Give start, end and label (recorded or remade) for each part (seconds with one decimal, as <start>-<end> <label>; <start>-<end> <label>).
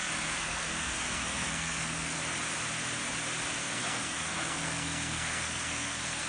0.0-2.2 remade; 2.2-3.6 recorded; 3.6-6.3 remade